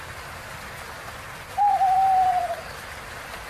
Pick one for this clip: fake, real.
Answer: real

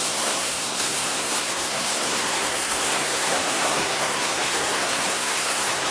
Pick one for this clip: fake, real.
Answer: fake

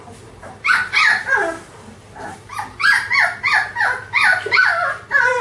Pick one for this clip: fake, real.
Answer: real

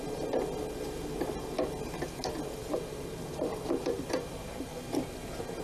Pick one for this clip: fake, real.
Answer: real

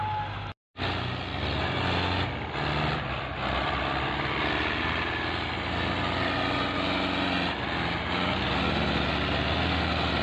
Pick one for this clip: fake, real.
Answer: real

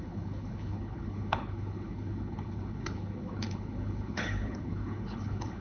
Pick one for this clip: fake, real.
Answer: fake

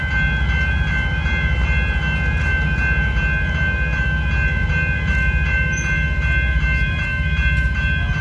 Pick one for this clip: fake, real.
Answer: real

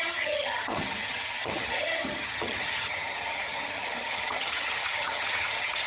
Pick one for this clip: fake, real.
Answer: fake